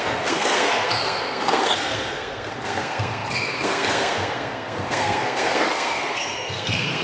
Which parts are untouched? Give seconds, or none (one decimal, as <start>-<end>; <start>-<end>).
none